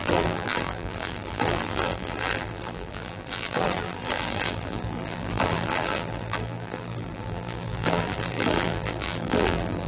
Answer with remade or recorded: remade